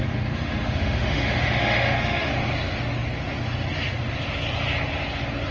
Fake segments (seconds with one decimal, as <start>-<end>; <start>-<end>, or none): 0.0-2.3